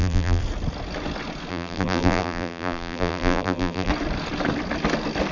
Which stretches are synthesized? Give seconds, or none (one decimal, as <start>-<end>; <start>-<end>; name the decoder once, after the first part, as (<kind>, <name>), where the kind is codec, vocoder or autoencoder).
0.0-0.4 (vocoder, BigVGAN v2); 1.5-3.9